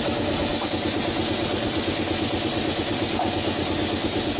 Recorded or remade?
recorded